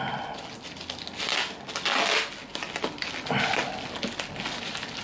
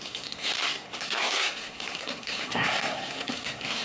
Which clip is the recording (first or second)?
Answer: first